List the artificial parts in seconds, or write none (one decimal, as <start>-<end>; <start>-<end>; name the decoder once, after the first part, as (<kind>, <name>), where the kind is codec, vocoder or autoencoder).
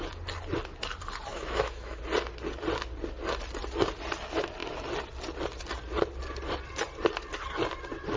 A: 1.3-2.0 (autoencoder, DAC-VAE)